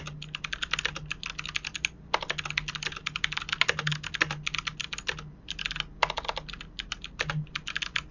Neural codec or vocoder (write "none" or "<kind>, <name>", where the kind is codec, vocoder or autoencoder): none